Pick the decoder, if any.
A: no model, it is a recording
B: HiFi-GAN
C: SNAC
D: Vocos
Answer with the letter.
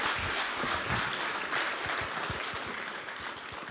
A